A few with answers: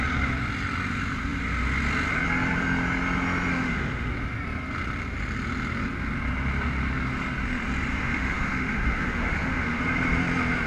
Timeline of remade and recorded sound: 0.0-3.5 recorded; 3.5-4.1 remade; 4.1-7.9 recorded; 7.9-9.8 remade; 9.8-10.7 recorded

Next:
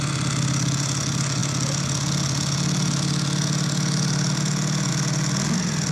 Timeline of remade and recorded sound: 0.0-5.9 recorded